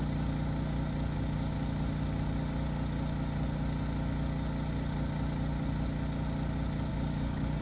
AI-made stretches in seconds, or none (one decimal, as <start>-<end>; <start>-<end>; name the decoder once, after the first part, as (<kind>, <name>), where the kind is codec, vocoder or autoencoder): 6.9-7.6 (codec, DAC)

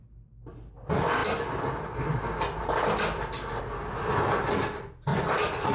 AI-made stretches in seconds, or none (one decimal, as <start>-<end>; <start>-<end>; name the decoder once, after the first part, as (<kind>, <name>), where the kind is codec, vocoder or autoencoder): none